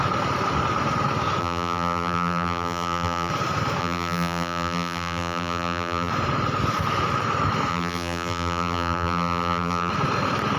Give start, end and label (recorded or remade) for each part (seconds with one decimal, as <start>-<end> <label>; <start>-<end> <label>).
0.0-1.4 recorded; 1.4-3.3 remade; 3.3-3.8 recorded; 3.8-6.1 remade; 6.1-7.7 recorded; 7.7-9.9 remade; 9.9-10.6 recorded